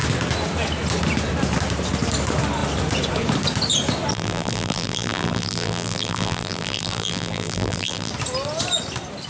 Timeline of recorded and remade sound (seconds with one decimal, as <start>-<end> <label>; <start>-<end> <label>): 0.0-4.1 recorded; 4.1-8.1 remade; 8.1-9.3 recorded